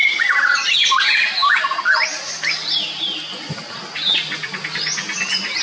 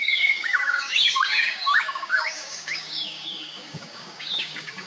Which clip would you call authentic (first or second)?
first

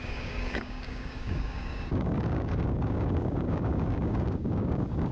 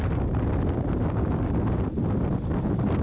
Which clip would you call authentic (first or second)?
second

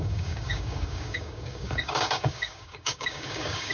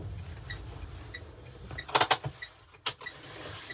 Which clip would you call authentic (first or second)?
second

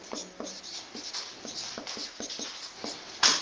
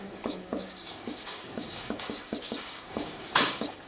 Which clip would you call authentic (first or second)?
first